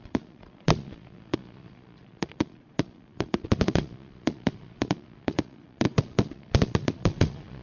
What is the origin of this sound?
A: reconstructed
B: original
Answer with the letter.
A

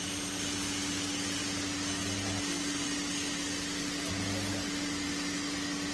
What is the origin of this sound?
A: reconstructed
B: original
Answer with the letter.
B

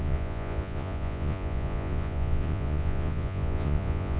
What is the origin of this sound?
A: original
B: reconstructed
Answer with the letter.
B